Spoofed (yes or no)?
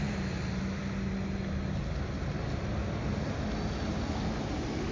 no